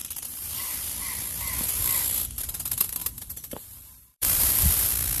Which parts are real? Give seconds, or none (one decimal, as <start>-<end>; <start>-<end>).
0.5-3.0; 4.5-5.2